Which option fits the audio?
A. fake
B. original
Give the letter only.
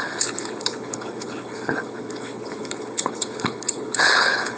A